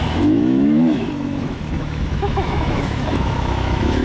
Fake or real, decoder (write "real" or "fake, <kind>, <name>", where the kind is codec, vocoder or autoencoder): fake, autoencoder, DAC-VAE